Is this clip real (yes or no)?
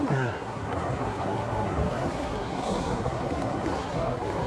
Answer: no